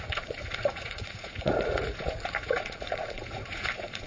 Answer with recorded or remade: remade